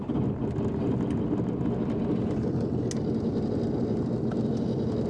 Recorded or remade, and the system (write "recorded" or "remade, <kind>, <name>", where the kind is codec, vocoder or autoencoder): recorded